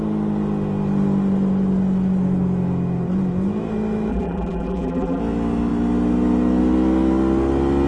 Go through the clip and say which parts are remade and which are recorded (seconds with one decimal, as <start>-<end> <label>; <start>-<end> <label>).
0.0-4.1 recorded; 4.1-5.2 remade; 5.2-7.9 recorded